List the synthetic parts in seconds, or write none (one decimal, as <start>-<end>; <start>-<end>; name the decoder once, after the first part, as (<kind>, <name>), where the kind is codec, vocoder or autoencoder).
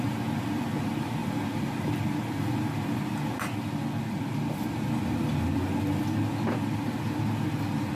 none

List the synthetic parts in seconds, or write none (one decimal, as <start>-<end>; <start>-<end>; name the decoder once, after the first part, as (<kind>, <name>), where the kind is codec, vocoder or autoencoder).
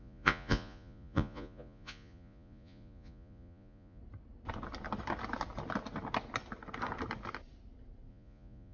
0.0-4.0 (vocoder, Vocos); 8.1-8.7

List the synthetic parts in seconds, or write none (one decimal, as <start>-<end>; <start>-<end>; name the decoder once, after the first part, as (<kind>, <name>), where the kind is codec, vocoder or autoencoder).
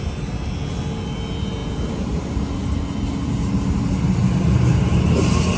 none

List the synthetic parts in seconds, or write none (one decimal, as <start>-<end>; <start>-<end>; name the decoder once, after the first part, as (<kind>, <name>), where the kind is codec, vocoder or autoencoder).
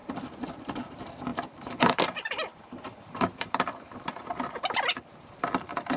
0.0-0.5 (vocoder, BigVGAN v2); 1.3-4.3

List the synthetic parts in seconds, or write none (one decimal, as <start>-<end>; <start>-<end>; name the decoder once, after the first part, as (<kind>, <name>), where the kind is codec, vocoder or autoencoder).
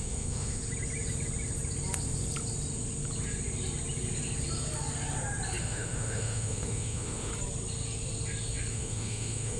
0.0-0.6 (autoencoder, DAC-VAE); 5.6-7.3; 8.7-9.6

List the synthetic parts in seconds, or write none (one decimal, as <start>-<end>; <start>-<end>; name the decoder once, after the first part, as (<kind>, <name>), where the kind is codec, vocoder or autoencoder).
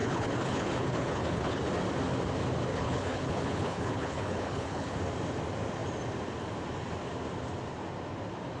0.0-1.6 (codec, HILCodec); 2.7-5.0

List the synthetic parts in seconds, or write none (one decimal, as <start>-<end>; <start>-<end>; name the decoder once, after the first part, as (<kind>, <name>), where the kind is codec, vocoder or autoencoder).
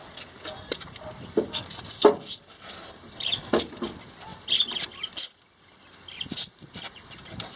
0.0-0.8 (vocoder, BigVGAN v2); 4.3-7.6